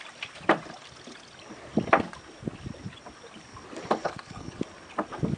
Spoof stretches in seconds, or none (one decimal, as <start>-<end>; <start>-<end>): 4.0-4.6